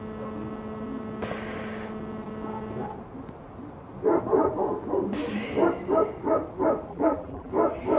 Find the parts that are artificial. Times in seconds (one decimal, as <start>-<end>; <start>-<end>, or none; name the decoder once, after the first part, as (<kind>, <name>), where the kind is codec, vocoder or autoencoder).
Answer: 6.9-7.5 (vocoder, BigVGAN v2)